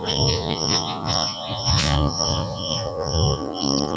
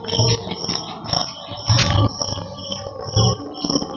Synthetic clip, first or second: first